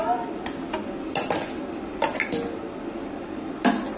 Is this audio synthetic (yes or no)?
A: no